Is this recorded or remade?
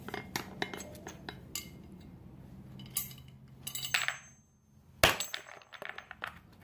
recorded